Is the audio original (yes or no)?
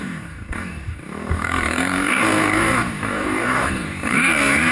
no